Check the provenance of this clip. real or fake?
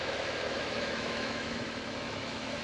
fake